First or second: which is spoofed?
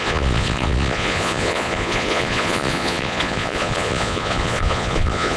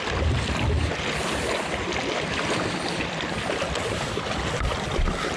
first